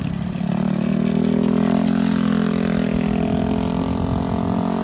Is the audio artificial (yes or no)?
no